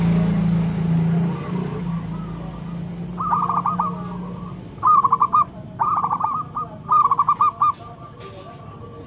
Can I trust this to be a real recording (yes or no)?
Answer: yes